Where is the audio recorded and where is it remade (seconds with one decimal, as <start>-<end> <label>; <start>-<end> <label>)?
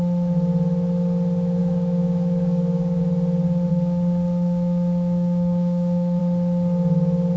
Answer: 0.0-1.6 recorded; 1.6-3.0 remade; 3.0-3.7 recorded; 3.7-6.2 remade; 6.2-7.4 recorded